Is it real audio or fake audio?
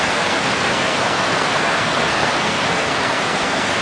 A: fake